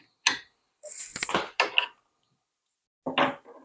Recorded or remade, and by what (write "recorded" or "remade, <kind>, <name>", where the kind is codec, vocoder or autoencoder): recorded